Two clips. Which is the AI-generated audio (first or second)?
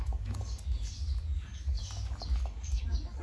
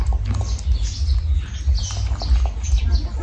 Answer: first